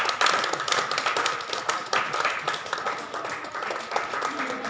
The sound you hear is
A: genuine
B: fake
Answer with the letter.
A